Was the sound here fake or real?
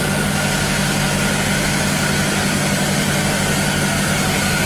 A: real